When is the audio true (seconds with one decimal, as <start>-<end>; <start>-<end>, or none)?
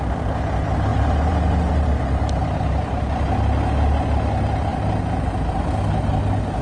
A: 0.0-0.9; 3.2-6.6